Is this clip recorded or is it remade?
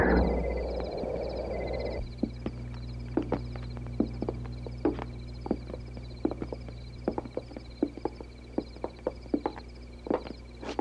recorded